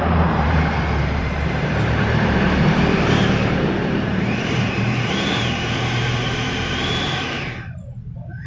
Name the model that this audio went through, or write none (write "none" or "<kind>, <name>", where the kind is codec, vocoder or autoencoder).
vocoder, BigVGAN v2